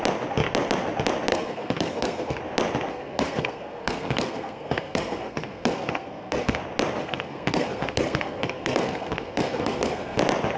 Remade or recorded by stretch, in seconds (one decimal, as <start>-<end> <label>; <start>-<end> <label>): 0.0-1.3 recorded; 1.3-2.4 remade; 2.4-2.9 recorded; 2.9-6.6 remade; 6.6-7.0 recorded; 7.0-10.2 remade; 10.2-10.6 recorded